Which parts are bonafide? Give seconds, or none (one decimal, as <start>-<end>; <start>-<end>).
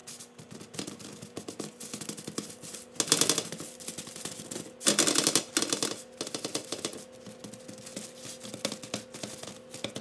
0.0-10.0